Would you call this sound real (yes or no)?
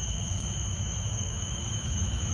no